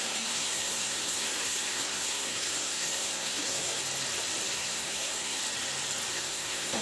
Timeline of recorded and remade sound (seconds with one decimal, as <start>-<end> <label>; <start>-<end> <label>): 0.0-3.8 remade; 3.8-4.5 recorded; 4.5-5.4 remade; 5.4-6.1 recorded; 6.1-6.8 remade